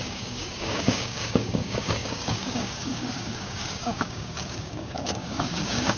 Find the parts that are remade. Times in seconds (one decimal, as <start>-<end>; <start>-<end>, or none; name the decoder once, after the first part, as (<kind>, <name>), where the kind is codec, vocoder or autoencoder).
0.0-6.0 (codec, DAC)